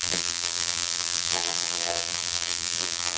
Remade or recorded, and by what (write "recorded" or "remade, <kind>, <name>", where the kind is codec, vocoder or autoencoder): remade, vocoder, BigVGAN v2